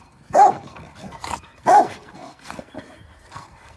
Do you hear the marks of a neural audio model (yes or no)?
yes